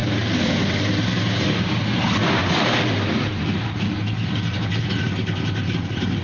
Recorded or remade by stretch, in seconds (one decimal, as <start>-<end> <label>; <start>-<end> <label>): 0.0-1.8 remade; 1.8-2.4 recorded; 2.4-4.4 remade; 4.4-6.2 recorded